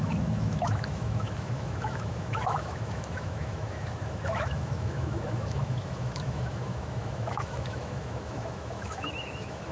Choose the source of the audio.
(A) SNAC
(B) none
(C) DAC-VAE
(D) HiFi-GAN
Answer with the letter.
C